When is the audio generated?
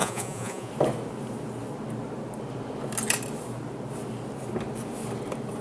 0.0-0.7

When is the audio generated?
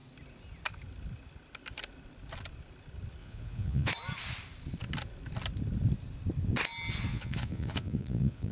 3.2-3.9; 7.1-8.5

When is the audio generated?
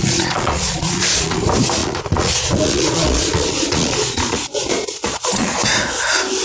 0.0-1.4; 1.8-5.6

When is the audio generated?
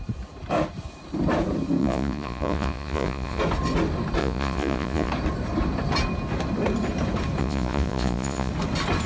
1.8-3.4; 4.2-5.1; 7.4-8.5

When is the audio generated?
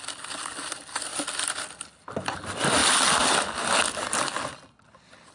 none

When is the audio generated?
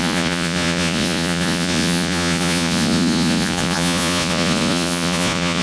0.0-5.6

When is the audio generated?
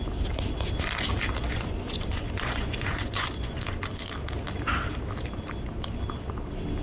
1.4-3.8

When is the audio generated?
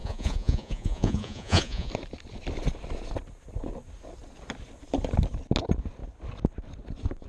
0.0-1.9